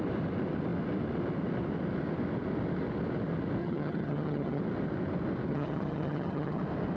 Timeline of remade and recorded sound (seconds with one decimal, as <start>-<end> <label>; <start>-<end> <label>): 0.0-3.6 recorded; 3.6-4.6 remade; 4.6-5.5 recorded; 5.5-6.6 remade; 6.6-7.0 recorded